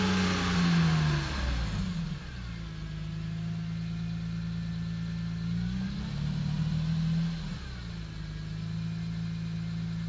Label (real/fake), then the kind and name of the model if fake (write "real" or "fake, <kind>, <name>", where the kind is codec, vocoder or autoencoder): real